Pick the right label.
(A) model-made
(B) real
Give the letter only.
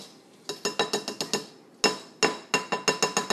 B